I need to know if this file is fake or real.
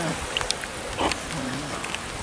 real